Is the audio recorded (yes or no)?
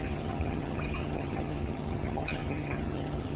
no